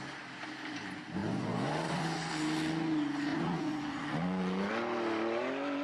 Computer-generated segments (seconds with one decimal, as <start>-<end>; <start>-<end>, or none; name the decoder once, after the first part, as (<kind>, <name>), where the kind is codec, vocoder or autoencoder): 1.2-2.3 (vocoder, Vocos); 3.3-4.7